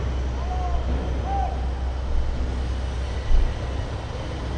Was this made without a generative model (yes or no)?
yes